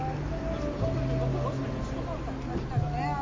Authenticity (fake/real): real